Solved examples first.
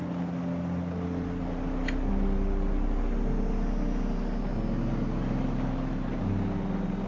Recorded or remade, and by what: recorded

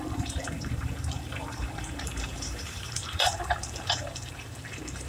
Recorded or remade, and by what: remade, vocoder, BigVGAN v2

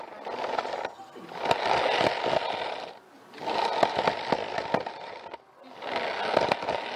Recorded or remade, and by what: recorded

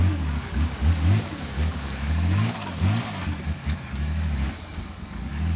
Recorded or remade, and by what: remade, codec, DAC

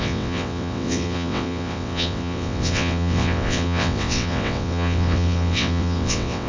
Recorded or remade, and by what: remade, vocoder, WaveNeXt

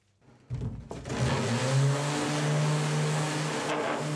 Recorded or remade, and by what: recorded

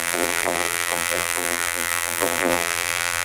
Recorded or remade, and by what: remade, vocoder, BigVGAN v2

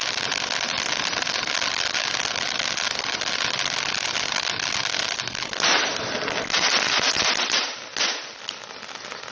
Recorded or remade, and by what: recorded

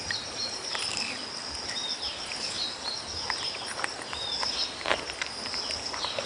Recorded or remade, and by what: remade, vocoder, BigVGAN v2